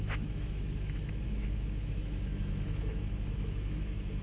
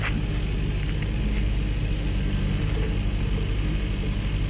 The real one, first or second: second